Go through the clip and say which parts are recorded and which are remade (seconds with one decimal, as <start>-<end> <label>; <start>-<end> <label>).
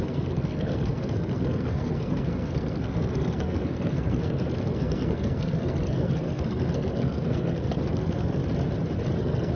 0.0-8.4 remade; 8.4-9.2 recorded; 9.2-9.6 remade